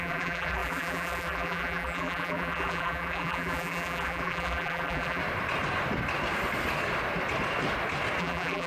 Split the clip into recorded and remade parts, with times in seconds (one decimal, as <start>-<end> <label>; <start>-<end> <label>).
0.0-5.2 remade; 5.2-8.2 recorded; 8.2-8.7 remade